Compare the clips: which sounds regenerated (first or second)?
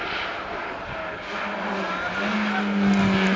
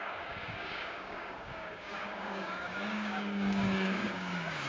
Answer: second